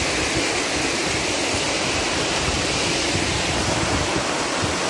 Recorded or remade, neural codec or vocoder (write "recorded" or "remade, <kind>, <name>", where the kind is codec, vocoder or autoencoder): recorded